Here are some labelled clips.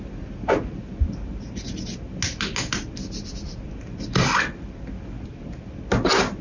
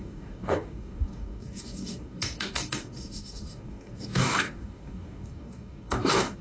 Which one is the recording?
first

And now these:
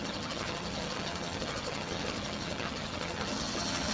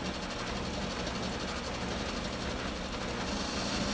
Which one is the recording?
second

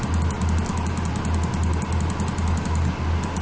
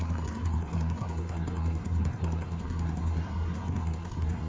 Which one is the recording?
first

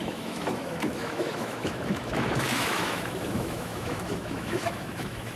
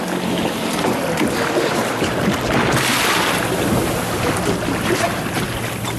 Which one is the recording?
second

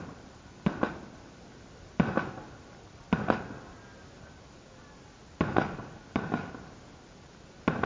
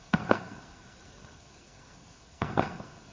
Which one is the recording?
first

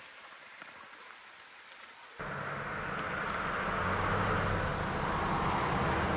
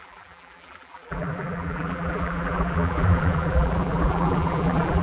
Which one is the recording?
first